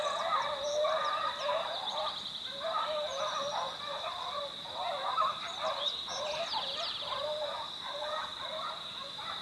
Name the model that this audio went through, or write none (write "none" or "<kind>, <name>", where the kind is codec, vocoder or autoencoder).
none